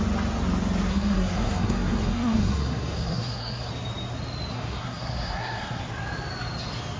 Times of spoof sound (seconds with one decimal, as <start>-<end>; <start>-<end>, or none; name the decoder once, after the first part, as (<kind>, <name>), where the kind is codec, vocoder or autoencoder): 0.9-3.7 (codec, SNAC); 4.5-5.8